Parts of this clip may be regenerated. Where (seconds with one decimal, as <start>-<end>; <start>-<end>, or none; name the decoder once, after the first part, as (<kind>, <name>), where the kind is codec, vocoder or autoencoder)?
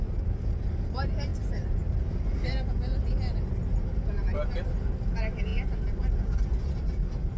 none